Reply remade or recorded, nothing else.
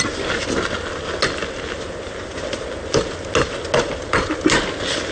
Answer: recorded